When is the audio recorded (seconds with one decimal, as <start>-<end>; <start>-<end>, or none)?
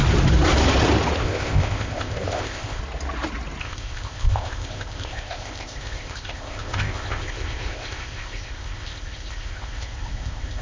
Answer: 0.0-1.2; 2.8-3.6